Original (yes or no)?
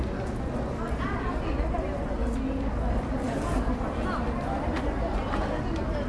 yes